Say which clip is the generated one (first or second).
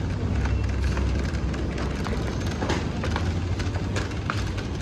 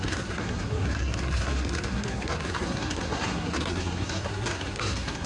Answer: second